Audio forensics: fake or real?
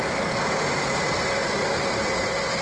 real